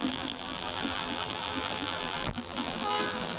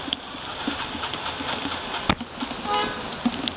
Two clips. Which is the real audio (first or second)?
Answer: second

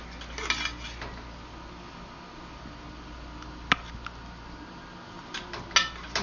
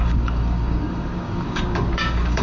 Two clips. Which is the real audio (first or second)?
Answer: first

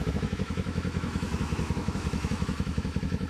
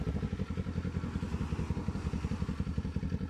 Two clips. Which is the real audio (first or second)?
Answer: second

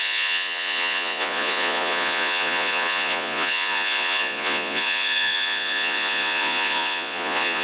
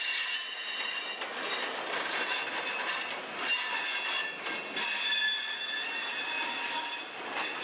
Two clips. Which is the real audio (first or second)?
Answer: second